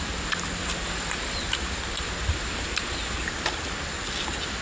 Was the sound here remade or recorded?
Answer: recorded